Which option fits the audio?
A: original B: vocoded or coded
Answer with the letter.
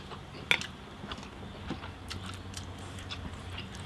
A